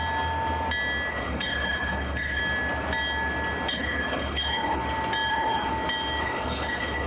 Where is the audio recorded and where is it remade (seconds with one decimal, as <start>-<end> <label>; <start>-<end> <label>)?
0.0-1.1 recorded; 1.1-2.4 remade; 2.4-3.7 recorded; 3.7-4.8 remade; 4.8-5.3 recorded; 5.3-5.7 remade; 5.7-6.2 recorded; 6.2-7.1 remade